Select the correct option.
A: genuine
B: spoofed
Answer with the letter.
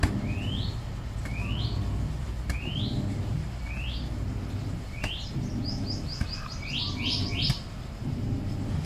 B